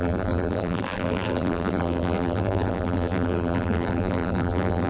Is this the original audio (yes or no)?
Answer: no